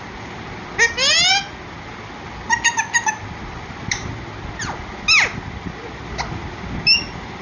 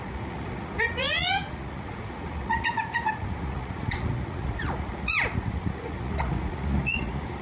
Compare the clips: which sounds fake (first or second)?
second